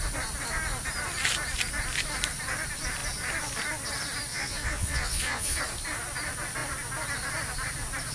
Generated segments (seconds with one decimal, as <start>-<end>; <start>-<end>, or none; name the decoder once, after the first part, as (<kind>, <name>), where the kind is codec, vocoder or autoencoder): 4.3-5.6 (vocoder, Vocos)